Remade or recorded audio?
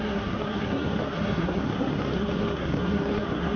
remade